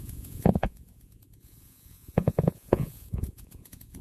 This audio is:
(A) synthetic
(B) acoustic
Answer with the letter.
A